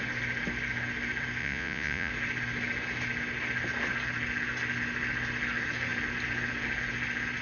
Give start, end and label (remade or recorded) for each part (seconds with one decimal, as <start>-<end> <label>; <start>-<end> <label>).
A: 0.0-1.4 recorded; 1.4-2.1 remade; 2.1-7.4 recorded